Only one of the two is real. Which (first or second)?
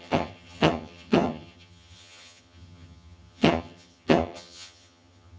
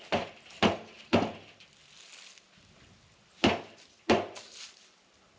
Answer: second